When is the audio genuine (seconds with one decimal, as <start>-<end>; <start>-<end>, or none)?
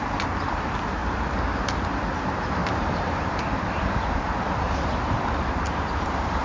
1.0-2.2